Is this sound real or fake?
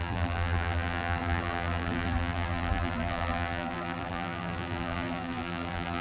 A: fake